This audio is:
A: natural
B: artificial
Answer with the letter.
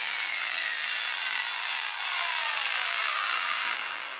B